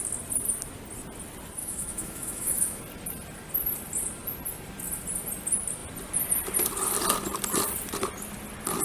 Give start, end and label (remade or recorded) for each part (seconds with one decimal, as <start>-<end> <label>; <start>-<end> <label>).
0.0-1.6 recorded; 1.6-2.8 remade; 2.8-8.8 recorded

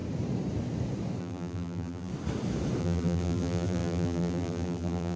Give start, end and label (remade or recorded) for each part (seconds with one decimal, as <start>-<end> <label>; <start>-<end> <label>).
0.0-1.2 recorded; 1.2-2.1 remade; 2.1-2.8 recorded; 2.8-5.2 remade

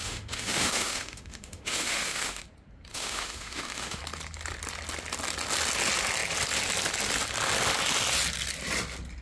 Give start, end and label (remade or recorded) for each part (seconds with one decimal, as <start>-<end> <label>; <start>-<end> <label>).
0.0-2.4 remade; 2.4-2.9 recorded; 2.9-4.0 remade; 4.0-9.2 recorded

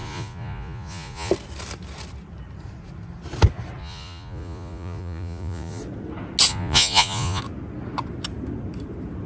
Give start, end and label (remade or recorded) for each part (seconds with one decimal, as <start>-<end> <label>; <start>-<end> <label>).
0.0-1.3 remade; 1.3-3.8 recorded; 3.8-5.8 remade; 5.8-6.5 recorded; 6.5-7.4 remade; 7.4-9.3 recorded

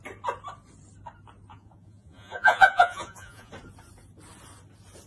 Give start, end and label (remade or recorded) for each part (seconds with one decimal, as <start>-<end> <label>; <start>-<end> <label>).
0.0-1.5 recorded; 1.5-3.5 remade; 3.5-5.1 recorded

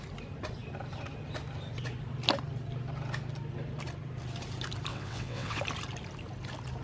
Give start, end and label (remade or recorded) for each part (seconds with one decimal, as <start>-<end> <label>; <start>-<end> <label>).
0.0-4.9 recorded; 4.9-5.6 remade; 5.6-6.8 recorded